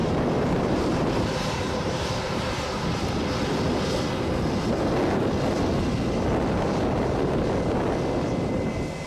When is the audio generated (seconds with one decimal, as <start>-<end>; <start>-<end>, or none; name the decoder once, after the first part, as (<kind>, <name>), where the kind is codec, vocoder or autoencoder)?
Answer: 0.0-3.2 (vocoder, BigVGAN v2)